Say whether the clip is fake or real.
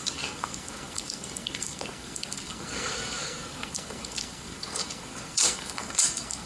fake